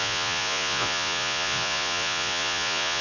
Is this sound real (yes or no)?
no